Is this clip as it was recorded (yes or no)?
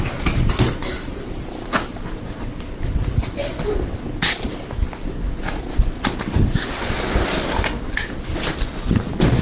yes